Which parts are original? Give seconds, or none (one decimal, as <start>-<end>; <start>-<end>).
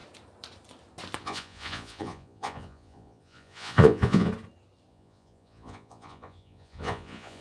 0.0-1.2; 4.3-4.9